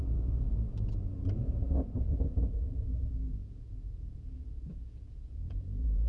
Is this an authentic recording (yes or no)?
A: no